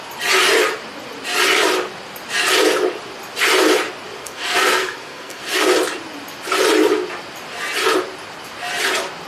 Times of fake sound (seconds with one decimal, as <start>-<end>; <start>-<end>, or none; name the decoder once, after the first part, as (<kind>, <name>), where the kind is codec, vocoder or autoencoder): 4.2-5.7 (codec, SNAC)

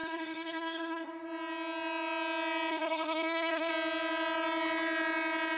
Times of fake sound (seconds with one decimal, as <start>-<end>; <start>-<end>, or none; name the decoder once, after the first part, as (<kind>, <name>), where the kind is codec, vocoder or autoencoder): 0.0-1.1 (codec, SNAC); 2.7-3.7

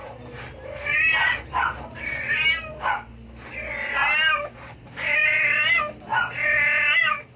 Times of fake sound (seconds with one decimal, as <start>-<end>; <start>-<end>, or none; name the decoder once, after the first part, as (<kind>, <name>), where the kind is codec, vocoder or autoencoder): 0.0-3.1 (vocoder, BigVGAN v2); 4.0-5.8

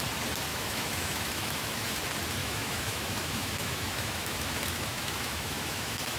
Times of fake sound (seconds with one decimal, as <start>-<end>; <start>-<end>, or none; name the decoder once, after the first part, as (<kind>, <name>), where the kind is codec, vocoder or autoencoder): 0.5-2.0 (autoencoder, DAC-VAE); 2.4-6.2